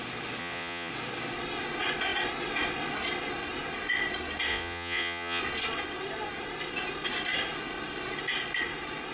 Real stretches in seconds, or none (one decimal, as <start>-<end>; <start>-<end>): 0.0-0.4; 0.9-4.5; 5.4-9.1